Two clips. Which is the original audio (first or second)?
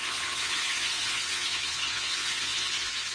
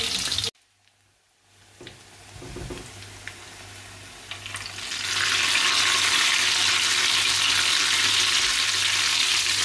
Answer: second